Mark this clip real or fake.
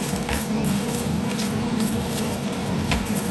fake